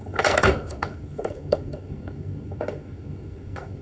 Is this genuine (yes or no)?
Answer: no